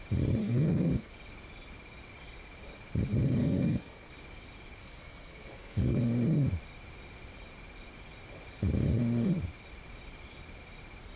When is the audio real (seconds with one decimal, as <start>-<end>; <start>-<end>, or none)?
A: 0.0-0.4; 1.1-3.4; 4.1-4.8; 6.0-11.2